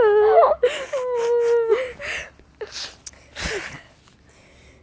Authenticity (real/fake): real